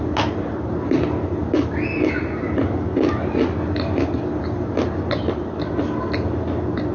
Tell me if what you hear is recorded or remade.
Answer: recorded